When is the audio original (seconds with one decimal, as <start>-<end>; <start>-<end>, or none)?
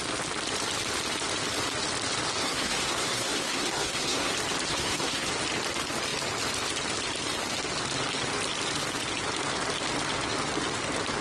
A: 0.0-2.4; 4.3-4.7; 5.3-11.2